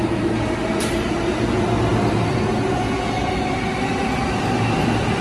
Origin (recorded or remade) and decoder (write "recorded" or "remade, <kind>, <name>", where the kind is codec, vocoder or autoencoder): recorded